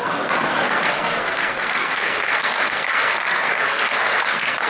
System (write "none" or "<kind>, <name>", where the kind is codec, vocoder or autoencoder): codec, SNAC